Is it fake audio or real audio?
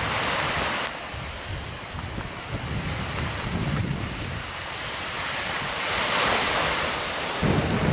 fake